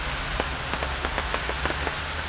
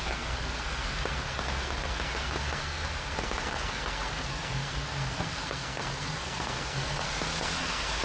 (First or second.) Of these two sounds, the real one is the first